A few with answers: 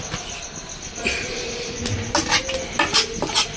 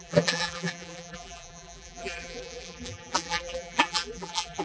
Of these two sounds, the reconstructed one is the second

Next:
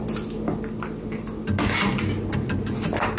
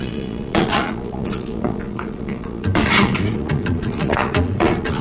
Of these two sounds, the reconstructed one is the second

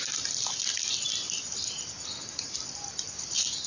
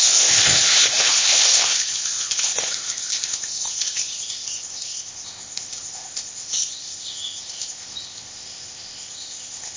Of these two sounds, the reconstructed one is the second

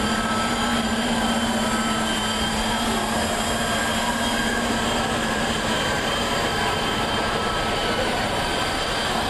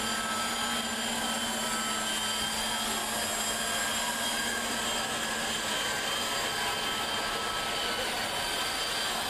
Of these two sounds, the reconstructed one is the first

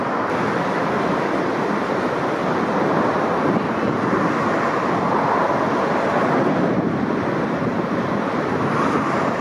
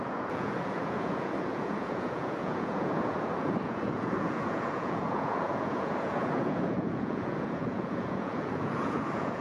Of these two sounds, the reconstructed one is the second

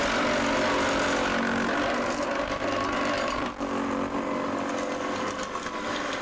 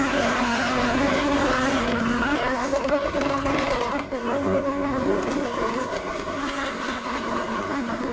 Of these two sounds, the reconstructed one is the second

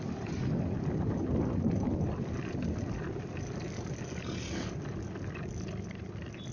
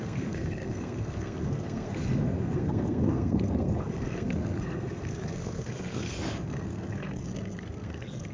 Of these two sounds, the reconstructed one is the second